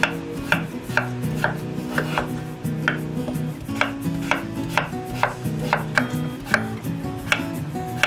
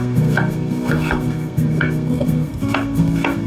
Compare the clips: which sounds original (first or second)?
first